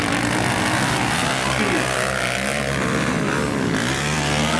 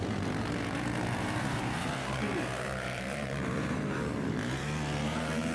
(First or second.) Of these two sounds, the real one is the first